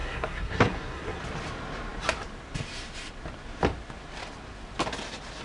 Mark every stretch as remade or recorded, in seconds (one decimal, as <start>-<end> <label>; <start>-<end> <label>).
0.0-1.2 remade; 1.2-5.4 recorded